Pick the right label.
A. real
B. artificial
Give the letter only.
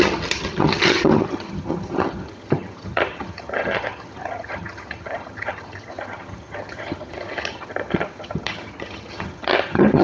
B